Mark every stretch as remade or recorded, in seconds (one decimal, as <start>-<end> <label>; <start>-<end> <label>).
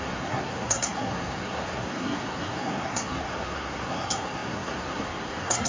0.0-5.7 remade